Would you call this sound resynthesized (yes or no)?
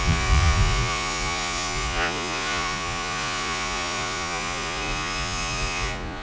yes